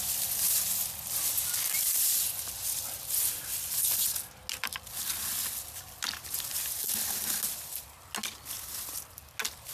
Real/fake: real